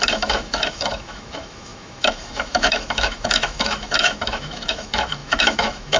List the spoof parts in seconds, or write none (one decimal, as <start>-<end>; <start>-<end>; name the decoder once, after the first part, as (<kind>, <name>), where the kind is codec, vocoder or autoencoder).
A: 0.0-6.0 (autoencoder, DAC-VAE)